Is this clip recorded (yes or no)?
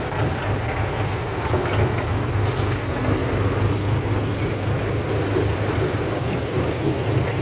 yes